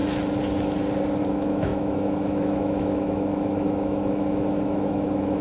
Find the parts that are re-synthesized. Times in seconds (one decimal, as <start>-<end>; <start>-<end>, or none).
1.2-5.4